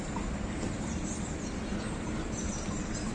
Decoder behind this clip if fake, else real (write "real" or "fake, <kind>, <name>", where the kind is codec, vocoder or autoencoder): real